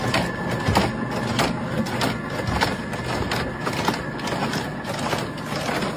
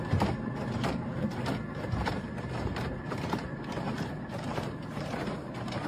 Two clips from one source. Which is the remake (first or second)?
second